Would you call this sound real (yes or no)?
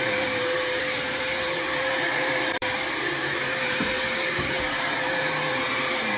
no